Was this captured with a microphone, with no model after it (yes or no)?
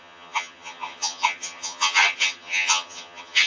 no